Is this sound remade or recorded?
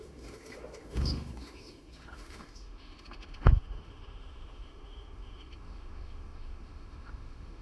remade